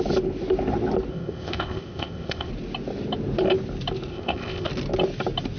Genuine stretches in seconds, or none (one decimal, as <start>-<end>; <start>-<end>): 0.0-1.1; 2.5-4.1; 4.7-5.6